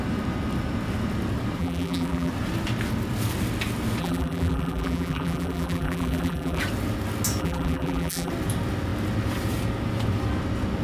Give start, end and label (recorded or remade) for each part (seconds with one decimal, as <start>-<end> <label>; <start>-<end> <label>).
0.0-1.6 recorded; 1.6-2.3 remade; 2.3-4.0 recorded; 4.0-6.6 remade; 6.6-7.4 recorded; 7.4-8.3 remade; 8.3-10.8 recorded